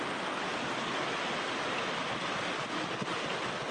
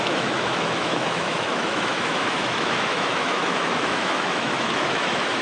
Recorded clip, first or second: first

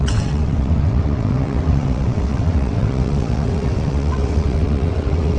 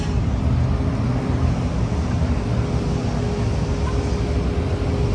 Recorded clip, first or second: second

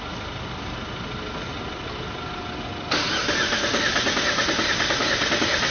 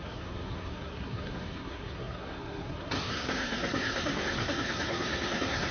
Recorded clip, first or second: first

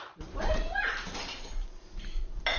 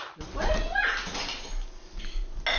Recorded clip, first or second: second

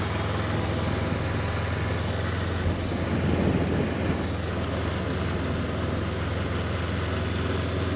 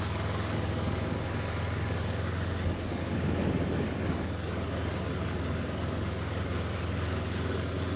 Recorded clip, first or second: first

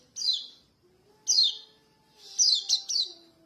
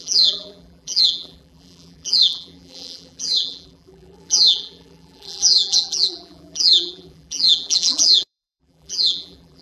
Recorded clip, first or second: first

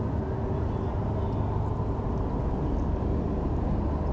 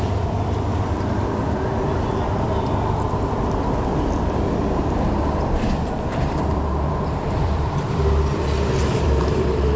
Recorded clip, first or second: first